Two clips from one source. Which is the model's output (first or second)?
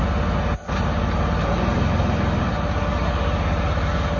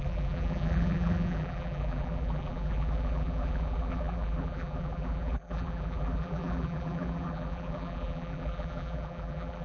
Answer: second